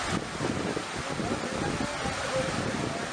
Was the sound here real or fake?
real